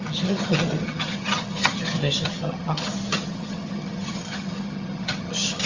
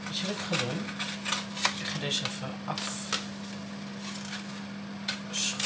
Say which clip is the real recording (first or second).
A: second